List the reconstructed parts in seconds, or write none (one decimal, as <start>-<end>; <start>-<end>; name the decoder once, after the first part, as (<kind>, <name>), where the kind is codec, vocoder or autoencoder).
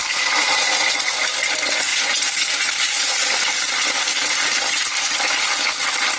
none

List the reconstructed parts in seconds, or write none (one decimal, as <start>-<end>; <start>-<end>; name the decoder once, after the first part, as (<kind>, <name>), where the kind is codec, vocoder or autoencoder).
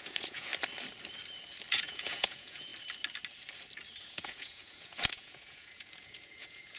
0.0-0.5 (vocoder, Vocos); 1.7-2.7; 4.0-6.8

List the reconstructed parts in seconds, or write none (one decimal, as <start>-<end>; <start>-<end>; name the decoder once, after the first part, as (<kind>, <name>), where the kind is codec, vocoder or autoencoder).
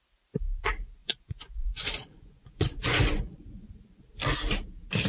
1.0-4.1 (vocoder, Vocos)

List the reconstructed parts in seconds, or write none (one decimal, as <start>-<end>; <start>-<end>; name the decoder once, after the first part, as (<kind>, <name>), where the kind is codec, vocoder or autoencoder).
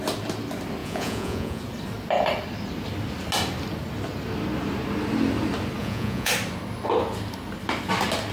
0.8-1.6 (vocoder, Vocos); 5.8-6.3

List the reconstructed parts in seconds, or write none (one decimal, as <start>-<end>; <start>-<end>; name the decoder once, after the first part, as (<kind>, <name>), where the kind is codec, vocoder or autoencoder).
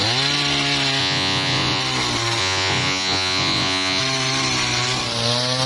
1.0-1.8 (vocoder, Vocos); 2.4-4.0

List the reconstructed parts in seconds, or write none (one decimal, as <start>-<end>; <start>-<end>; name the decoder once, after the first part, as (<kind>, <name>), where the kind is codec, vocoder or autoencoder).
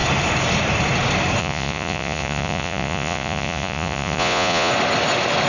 1.4-4.7 (vocoder, Vocos)